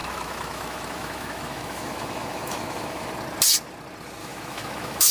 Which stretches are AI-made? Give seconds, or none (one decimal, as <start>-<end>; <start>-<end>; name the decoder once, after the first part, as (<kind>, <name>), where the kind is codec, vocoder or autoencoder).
0.0-3.1 (autoencoder, DAC-VAE); 4.2-5.1